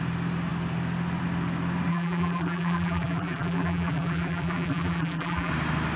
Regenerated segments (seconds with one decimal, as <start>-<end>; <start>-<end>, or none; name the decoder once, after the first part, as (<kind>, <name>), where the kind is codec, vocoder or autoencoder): 1.9-5.5 (vocoder, BigVGAN v2)